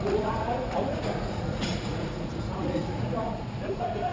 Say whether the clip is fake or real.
fake